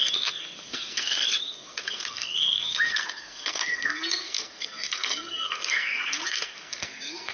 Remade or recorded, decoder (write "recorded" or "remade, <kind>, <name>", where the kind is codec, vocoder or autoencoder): remade, codec, SNAC